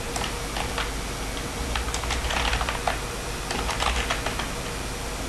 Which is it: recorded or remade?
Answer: recorded